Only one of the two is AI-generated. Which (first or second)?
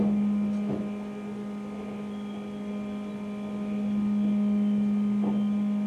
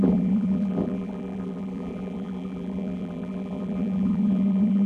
second